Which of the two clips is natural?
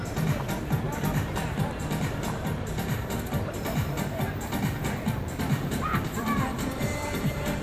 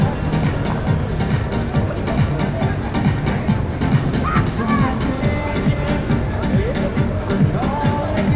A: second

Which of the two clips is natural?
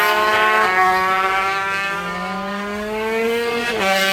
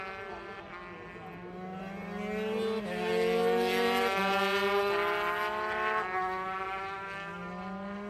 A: second